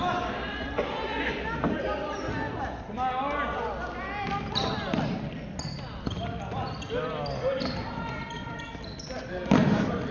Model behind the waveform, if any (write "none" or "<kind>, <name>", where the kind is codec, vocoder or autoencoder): none